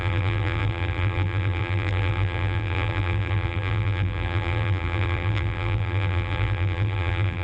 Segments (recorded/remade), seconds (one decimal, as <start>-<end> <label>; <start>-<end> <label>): 0.0-7.4 remade